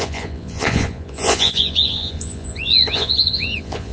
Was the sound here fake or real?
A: fake